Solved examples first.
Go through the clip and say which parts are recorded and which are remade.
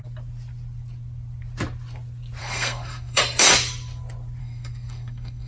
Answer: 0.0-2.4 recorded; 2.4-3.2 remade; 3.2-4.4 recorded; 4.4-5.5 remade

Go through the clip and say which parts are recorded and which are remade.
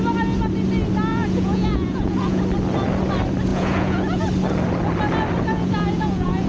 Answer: 0.0-1.1 recorded; 1.1-2.4 remade; 2.4-3.5 recorded; 3.5-4.2 remade; 4.2-5.5 recorded; 5.5-6.5 remade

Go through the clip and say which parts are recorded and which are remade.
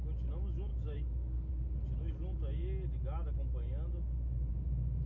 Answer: 0.0-0.7 recorded; 0.7-1.5 remade; 1.5-5.1 recorded